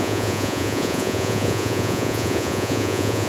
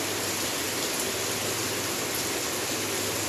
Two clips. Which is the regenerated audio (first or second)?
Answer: first